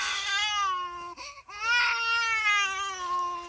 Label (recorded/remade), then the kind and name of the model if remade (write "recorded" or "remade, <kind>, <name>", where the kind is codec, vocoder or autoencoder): recorded